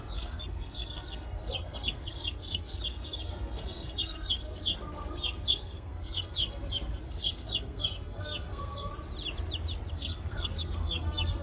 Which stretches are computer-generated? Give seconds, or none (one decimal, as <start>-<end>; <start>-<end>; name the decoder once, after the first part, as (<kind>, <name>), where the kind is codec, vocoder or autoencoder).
0.0-8.9 (codec, SNAC); 9.9-11.4